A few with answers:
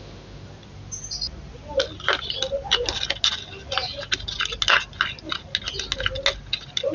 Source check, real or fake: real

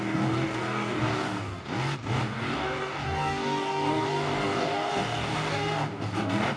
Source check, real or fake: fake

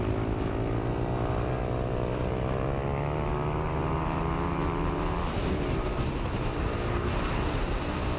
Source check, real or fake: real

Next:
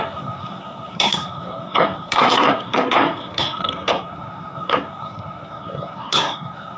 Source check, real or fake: fake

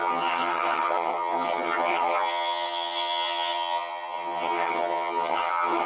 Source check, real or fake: fake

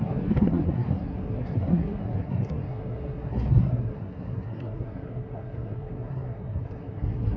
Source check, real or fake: fake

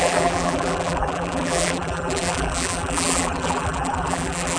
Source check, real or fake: fake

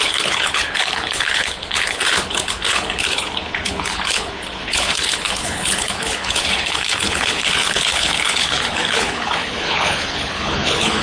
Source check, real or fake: fake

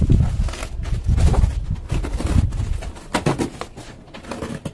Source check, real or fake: real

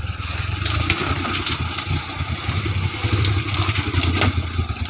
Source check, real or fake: real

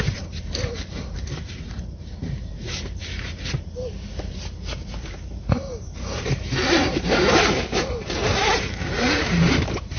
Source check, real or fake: fake